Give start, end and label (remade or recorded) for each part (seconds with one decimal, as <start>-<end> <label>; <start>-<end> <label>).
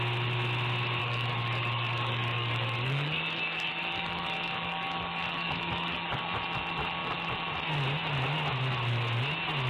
0.0-1.0 recorded; 1.0-6.2 remade; 6.2-9.7 recorded